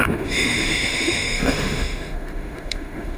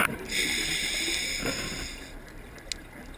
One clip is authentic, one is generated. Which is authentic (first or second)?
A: second